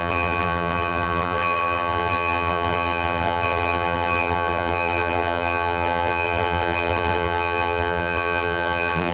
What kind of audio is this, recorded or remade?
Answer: remade